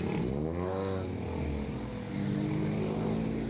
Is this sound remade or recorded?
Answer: recorded